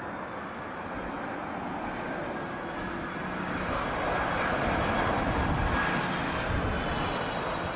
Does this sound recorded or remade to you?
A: recorded